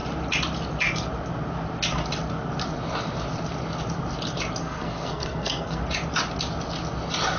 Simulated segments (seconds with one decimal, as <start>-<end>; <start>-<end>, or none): 4.6-5.8